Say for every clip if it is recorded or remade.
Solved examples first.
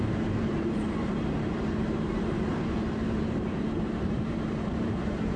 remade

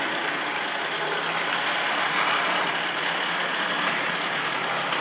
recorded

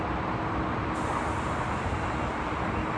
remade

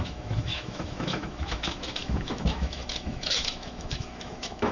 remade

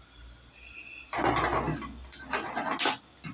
recorded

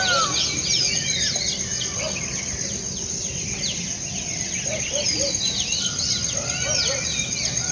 recorded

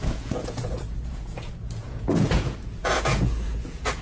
remade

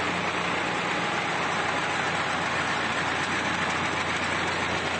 recorded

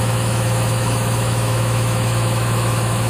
remade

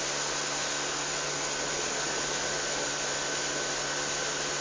recorded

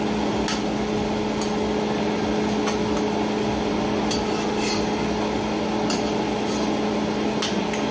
recorded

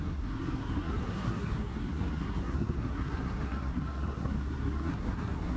remade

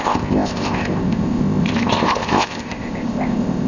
remade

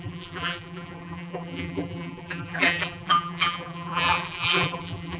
remade